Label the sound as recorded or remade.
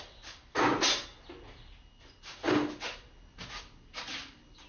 recorded